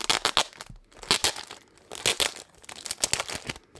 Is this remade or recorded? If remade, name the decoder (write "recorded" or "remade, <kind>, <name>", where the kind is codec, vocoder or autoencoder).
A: recorded